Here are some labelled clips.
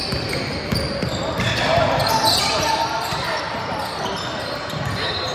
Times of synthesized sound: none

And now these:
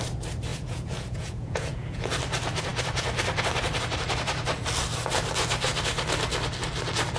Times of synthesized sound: 0.5-2.1 (vocoder, Vocos)

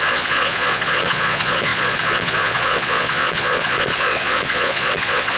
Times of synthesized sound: 0.0-5.4 (vocoder, Vocos)

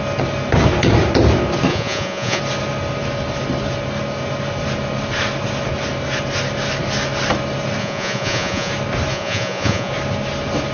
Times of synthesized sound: 1.7-2.4 (vocoder, Vocos); 7.8-8.7; 9.1-9.9